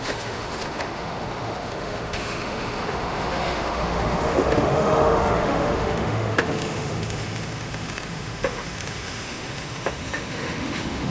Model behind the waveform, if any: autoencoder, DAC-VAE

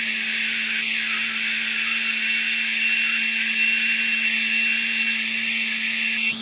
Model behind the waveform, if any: none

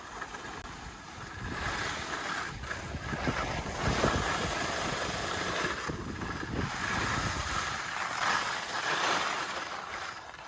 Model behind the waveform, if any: none